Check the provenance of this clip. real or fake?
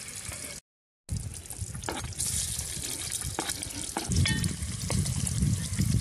real